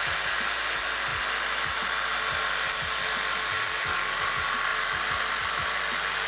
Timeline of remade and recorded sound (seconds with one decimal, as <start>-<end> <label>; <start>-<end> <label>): 0.0-6.3 recorded